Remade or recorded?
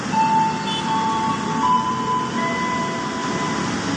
recorded